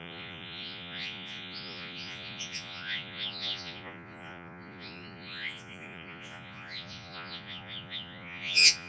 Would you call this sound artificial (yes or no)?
yes